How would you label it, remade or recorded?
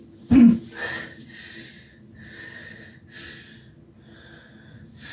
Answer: recorded